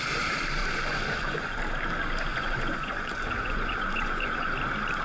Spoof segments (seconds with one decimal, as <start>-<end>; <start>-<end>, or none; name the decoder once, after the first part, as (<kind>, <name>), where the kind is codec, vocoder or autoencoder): 0.6-1.6 (vocoder, Vocos); 2.3-4.5